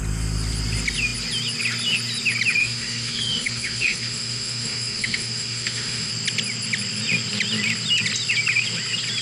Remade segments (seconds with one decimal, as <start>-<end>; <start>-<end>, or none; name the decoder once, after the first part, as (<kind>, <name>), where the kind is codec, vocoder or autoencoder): 2.6-6.1 (autoencoder, DAC-VAE)

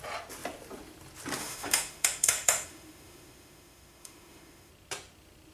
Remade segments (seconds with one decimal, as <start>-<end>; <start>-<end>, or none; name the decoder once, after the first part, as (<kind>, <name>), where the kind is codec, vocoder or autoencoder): 1.4-4.7 (autoencoder, DAC-VAE)

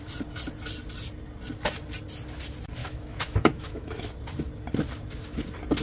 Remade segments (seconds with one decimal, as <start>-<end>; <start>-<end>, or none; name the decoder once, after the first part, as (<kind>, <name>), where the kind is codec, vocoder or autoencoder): 2.8-4.1 (autoencoder, DAC-VAE)

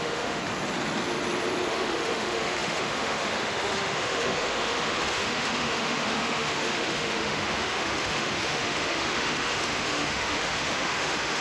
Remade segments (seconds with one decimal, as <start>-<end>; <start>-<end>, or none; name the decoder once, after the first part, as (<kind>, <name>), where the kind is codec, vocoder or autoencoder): 0.0-0.4 (autoencoder, DAC-VAE); 1.7-11.4

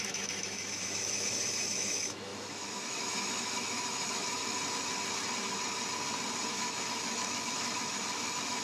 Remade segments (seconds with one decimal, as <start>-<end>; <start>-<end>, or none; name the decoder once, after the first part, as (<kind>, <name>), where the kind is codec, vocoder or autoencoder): 0.0-4.4 (autoencoder, DAC-VAE); 6.5-8.6